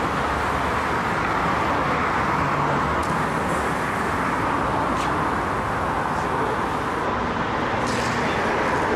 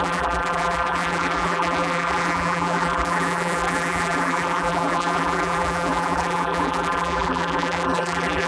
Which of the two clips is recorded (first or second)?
first